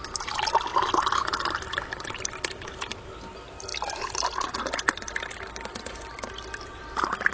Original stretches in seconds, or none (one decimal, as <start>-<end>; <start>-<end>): 0.0-7.3